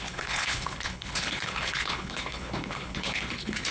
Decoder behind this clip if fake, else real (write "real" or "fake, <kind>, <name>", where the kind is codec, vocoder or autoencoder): fake, codec, HILCodec